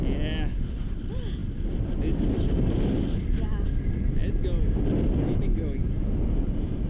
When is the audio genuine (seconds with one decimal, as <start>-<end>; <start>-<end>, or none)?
0.0-6.9

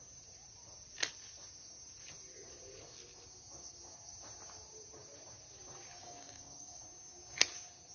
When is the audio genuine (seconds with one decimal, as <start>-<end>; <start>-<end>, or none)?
0.0-6.0; 6.8-7.9

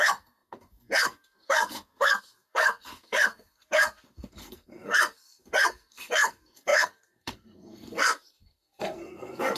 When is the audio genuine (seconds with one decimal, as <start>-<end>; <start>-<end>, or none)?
none

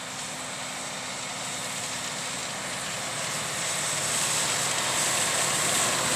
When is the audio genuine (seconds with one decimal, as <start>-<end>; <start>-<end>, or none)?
0.0-6.2

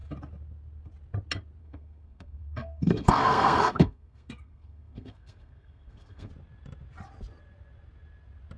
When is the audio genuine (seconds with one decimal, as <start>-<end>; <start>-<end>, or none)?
0.0-1.6; 6.3-8.6